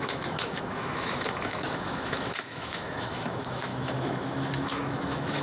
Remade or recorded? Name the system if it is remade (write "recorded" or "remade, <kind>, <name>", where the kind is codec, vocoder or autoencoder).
remade, autoencoder, DAC-VAE